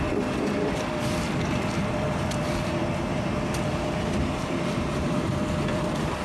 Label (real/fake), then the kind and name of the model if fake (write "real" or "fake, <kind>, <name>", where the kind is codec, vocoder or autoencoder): fake, vocoder, BigVGAN v2